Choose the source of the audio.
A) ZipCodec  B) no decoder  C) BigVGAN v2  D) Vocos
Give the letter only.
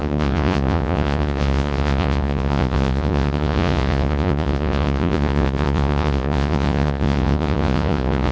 D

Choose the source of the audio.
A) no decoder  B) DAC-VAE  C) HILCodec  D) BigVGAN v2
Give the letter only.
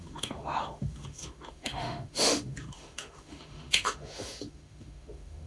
B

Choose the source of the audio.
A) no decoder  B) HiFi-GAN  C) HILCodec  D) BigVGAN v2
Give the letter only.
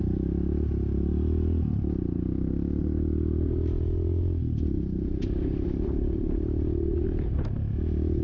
A